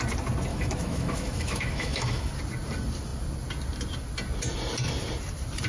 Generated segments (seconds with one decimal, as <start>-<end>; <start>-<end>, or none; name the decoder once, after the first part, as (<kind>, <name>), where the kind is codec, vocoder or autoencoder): 0.5-2.3 (autoencoder, DAC-VAE)